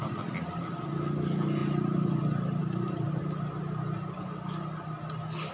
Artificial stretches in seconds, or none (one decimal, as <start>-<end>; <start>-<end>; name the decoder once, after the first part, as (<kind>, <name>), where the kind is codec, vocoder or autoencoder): 1.6-2.2 (vocoder, BigVGAN v2); 2.6-3.2